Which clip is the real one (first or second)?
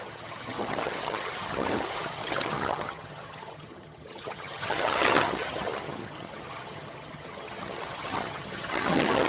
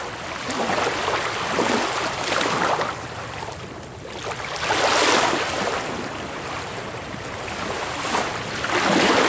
second